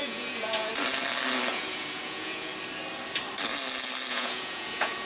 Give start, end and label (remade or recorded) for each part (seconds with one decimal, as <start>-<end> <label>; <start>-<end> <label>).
0.0-0.7 remade; 0.7-1.5 recorded; 1.5-2.5 remade; 2.5-4.1 recorded; 4.1-5.0 remade